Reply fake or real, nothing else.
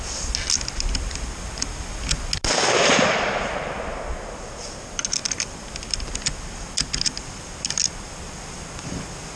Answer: real